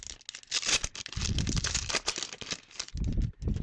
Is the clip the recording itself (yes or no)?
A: yes